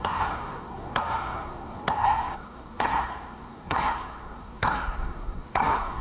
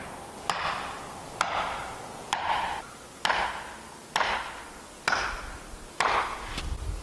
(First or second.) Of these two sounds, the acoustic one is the second